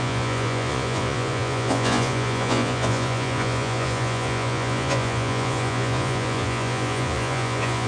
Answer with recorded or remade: remade